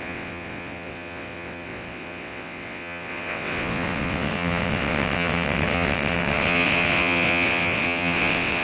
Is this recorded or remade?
remade